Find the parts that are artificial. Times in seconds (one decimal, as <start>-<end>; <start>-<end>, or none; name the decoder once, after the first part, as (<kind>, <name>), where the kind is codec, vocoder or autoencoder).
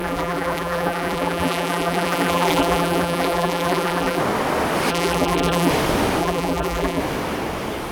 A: 0.0-4.2 (vocoder, BigVGAN v2); 4.9-5.7; 6.2-7.0